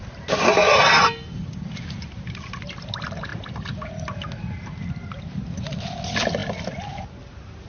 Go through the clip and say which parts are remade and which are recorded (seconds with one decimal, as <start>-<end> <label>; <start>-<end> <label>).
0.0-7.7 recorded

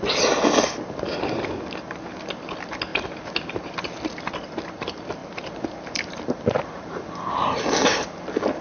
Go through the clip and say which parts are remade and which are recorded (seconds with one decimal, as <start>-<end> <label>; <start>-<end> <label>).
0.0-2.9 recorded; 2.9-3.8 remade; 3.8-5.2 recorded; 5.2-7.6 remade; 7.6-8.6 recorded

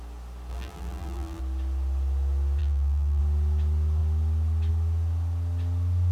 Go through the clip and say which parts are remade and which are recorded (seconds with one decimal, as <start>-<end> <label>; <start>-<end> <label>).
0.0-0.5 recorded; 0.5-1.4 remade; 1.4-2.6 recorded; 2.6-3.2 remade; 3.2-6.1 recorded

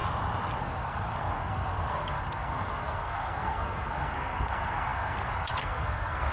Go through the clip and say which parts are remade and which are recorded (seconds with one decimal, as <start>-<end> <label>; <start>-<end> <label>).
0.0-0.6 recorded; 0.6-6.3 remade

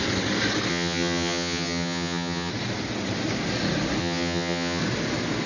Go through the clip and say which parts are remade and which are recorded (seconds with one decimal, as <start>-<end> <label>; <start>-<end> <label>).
0.0-0.7 recorded; 0.7-2.5 remade; 2.5-4.0 recorded; 4.0-4.8 remade; 4.8-5.5 recorded

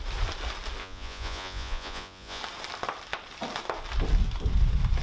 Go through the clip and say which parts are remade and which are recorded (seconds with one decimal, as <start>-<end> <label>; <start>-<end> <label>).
0.0-0.8 recorded; 0.8-2.4 remade; 2.4-5.0 recorded

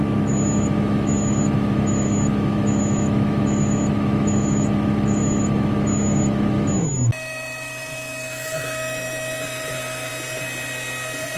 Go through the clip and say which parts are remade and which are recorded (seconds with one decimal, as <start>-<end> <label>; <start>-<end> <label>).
0.0-10.1 remade; 10.1-11.4 recorded